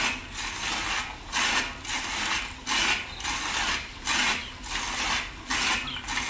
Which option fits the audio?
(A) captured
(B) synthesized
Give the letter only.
A